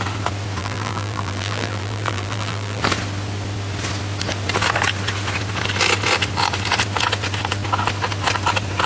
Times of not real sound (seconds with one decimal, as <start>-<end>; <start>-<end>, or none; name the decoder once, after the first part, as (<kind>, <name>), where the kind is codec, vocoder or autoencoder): 0.6-2.8 (vocoder, BigVGAN v2)